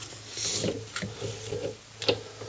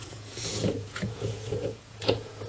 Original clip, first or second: first